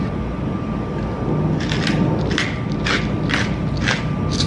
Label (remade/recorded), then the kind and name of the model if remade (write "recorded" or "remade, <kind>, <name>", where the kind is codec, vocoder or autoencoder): recorded